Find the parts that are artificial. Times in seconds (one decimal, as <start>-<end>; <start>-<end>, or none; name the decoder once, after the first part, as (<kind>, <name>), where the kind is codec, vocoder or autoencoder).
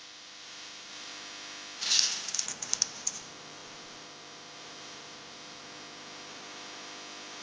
0.0-1.1 (vocoder, BigVGAN v2); 2.7-5.6